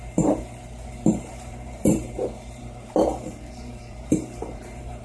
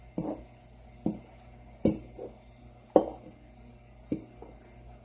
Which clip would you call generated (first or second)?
first